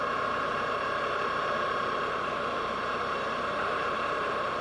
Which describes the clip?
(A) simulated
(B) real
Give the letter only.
B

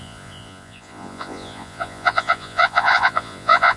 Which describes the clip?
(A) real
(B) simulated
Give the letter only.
B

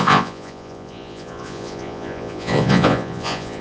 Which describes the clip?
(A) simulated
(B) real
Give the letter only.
A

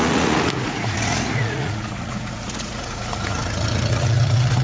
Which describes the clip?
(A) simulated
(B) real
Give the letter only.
A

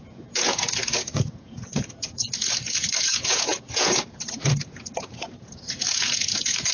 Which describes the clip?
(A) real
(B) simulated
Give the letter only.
B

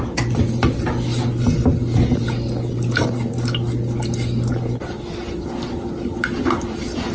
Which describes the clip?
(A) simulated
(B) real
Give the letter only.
B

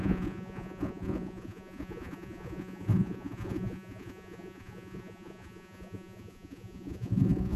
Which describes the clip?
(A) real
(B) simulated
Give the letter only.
B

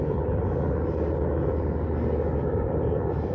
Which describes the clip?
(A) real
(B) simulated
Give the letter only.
A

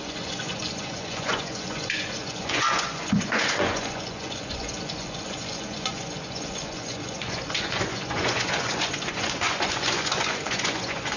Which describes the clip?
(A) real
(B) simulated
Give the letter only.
B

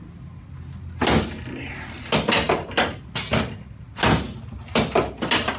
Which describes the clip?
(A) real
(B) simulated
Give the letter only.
A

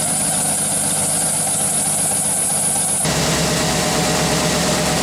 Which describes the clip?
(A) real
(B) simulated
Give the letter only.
A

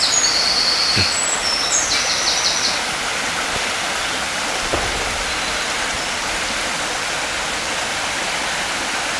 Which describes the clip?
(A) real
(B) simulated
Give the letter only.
A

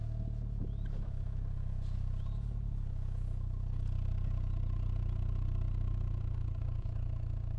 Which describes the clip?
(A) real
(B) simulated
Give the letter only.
B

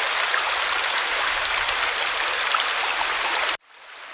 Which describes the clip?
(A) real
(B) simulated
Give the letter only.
A